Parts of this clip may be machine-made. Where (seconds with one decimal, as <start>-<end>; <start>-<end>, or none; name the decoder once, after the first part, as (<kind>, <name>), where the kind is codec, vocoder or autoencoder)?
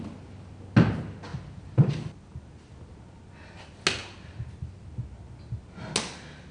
none